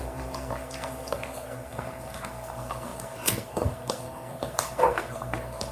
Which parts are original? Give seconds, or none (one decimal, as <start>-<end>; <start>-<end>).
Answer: none